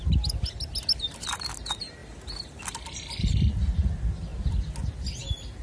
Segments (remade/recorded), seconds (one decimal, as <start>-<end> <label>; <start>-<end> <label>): 0.0-5.6 recorded